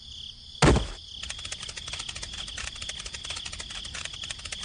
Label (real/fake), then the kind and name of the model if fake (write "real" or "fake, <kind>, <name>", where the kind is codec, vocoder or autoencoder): real